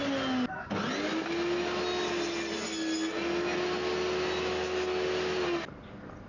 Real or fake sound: real